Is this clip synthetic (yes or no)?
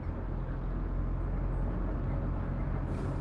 no